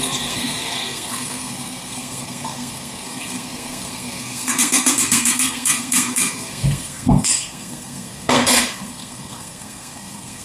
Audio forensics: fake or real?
fake